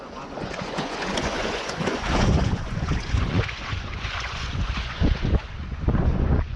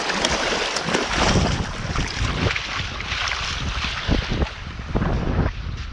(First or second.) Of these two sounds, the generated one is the first